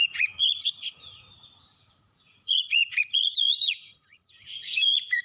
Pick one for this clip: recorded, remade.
remade